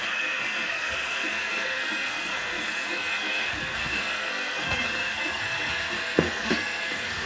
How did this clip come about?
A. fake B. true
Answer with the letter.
A